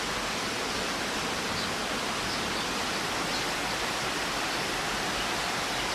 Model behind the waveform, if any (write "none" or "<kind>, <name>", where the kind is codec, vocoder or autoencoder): none